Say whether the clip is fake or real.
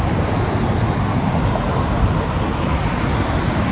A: real